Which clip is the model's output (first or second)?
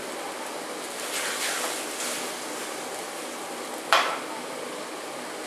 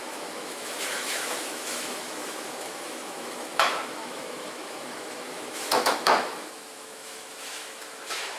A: second